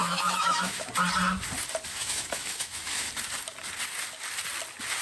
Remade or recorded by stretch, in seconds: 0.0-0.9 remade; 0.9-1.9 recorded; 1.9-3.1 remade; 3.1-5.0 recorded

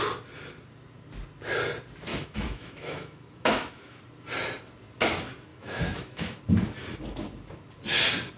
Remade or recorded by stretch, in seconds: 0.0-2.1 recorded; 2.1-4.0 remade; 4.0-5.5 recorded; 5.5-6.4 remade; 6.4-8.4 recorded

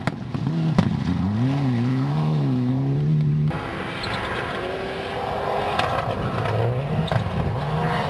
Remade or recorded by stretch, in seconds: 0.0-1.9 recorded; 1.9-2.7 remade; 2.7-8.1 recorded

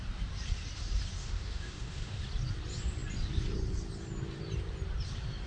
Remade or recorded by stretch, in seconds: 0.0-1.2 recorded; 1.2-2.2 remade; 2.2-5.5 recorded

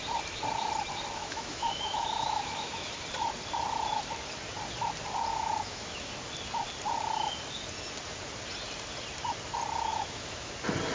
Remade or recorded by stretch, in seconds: 0.0-1.2 recorded; 1.2-2.9 remade; 2.9-5.3 recorded; 5.3-6.1 remade; 6.1-9.9 recorded; 9.9-10.5 remade; 10.5-10.9 recorded

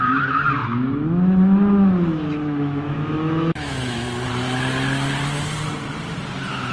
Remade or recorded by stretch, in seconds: 0.0-0.6 recorded; 0.6-4.3 remade; 4.3-6.7 recorded

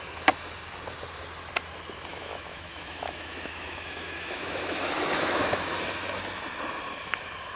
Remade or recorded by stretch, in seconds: 0.0-2.1 recorded; 2.1-5.7 remade; 5.7-7.6 recorded

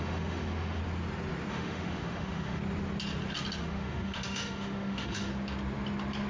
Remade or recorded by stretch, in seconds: 0.0-0.8 remade; 0.8-1.5 recorded; 1.5-2.6 remade; 2.6-3.6 recorded; 3.6-5.3 remade; 5.3-6.3 recorded